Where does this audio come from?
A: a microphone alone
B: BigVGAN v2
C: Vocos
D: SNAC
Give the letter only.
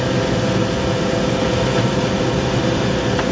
A